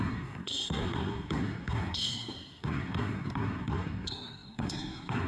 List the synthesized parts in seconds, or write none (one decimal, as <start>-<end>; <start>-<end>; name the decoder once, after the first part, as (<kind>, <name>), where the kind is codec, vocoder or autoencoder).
0.0-5.3 (codec, SNAC)